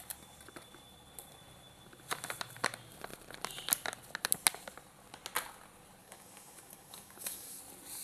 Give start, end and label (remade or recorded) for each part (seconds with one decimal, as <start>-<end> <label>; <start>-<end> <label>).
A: 0.0-6.0 recorded; 6.0-7.6 remade; 7.6-8.0 recorded